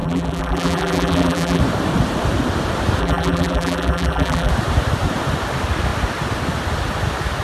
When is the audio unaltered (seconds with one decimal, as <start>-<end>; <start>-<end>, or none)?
1.6-3.0; 4.5-7.4